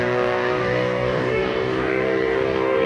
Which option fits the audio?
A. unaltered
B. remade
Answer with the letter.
B